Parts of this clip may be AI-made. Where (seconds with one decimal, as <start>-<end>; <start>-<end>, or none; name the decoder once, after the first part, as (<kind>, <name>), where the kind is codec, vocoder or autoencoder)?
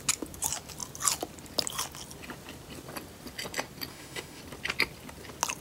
3.9-4.4 (autoencoder, DAC-VAE)